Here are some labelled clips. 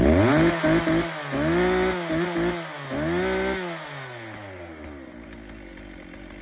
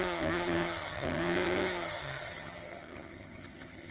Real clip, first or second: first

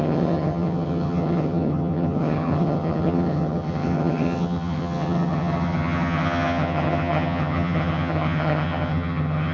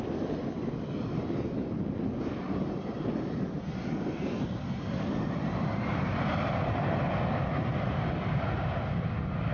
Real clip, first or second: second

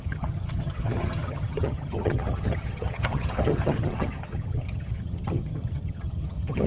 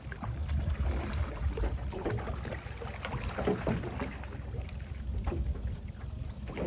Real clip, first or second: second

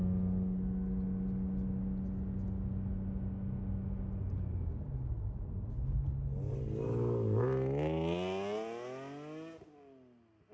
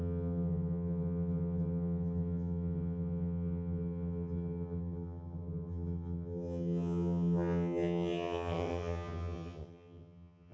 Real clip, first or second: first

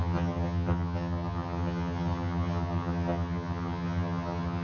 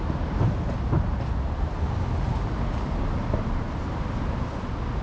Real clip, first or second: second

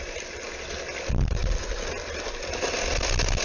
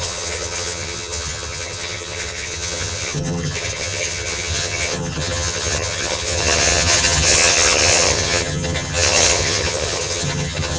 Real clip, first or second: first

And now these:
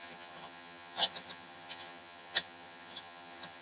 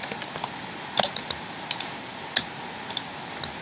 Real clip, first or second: second